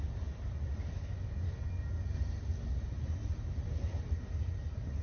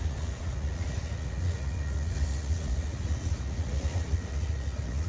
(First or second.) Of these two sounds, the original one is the first